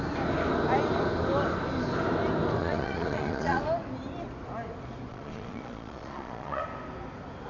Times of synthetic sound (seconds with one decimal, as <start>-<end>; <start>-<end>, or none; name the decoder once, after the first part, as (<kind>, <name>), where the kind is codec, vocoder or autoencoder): 2.6-3.6 (vocoder, Vocos); 5.1-6.6